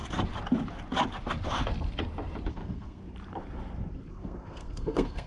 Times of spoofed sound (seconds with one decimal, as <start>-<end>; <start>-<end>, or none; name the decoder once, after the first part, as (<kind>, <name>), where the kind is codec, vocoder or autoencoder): 2.5-3.0 (codec, SNAC); 4.1-5.3